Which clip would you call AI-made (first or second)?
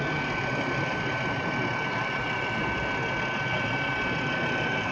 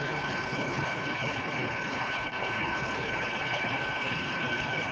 second